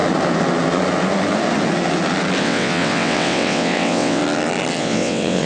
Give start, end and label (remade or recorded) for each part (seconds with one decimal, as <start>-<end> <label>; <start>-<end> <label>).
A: 0.0-2.4 recorded; 2.4-4.2 remade; 4.2-4.8 recorded; 4.8-5.5 remade